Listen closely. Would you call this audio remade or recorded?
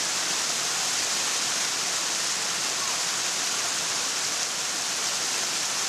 recorded